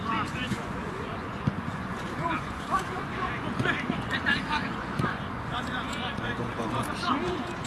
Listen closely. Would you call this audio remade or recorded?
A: remade